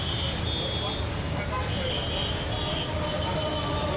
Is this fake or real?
real